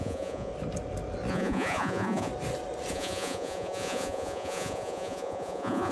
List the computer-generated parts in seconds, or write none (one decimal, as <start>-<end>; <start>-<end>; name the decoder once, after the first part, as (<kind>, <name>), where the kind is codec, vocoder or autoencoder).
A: 0.0-0.5 (vocoder, Vocos); 1.3-2.3; 2.9-5.9